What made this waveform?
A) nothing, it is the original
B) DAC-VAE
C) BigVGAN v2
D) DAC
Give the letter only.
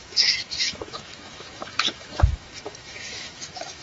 B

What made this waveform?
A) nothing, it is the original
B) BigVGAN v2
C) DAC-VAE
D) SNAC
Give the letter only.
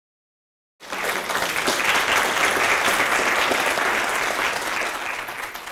A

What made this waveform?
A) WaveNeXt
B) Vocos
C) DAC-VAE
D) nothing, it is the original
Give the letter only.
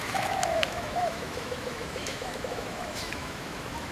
C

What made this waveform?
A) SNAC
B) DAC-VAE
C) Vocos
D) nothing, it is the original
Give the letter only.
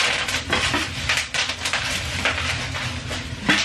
D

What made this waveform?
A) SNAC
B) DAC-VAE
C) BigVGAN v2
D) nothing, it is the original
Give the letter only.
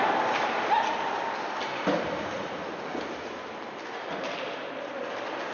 D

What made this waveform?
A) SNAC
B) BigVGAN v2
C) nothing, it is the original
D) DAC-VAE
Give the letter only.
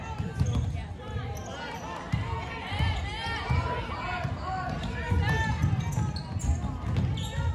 C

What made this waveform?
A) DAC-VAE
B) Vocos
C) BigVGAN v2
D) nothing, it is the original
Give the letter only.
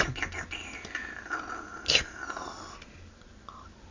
D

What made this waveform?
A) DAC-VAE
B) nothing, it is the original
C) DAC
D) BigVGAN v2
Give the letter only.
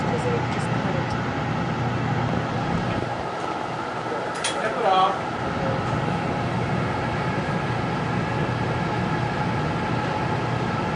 B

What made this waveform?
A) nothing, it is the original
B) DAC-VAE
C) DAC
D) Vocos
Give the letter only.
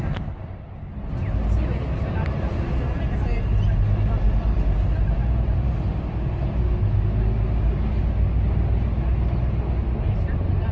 A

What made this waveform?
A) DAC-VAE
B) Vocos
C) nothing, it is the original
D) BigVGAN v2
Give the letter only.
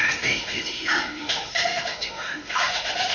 A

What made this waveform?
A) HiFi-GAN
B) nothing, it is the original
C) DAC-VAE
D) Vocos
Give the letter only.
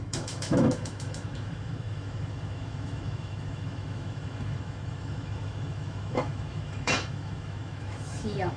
C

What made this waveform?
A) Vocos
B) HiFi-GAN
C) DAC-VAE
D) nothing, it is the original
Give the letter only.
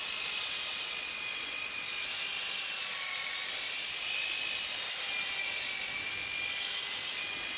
D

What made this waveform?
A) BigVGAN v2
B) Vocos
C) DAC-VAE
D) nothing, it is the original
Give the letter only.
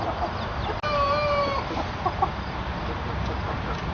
D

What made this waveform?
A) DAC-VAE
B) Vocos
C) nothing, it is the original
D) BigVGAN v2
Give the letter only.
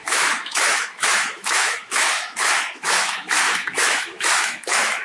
A